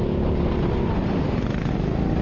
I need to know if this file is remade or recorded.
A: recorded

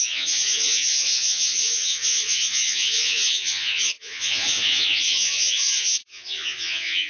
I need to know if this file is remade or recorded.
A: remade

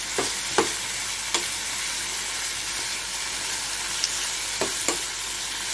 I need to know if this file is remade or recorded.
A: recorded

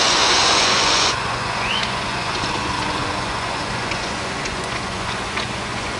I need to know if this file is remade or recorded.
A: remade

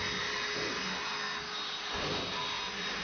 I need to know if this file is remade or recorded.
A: recorded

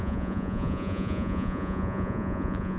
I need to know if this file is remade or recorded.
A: remade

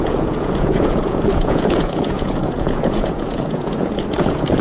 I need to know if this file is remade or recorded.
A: remade